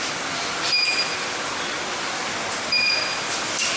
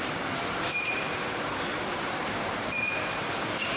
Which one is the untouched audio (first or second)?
first